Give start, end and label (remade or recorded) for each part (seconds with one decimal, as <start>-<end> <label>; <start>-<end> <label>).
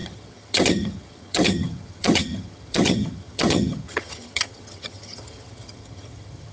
0.0-6.5 remade